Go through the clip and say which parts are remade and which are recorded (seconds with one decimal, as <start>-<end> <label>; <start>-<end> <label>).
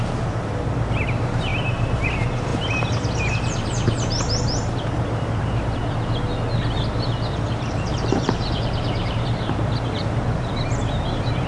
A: 0.0-5.8 remade; 5.8-7.7 recorded; 7.7-11.5 remade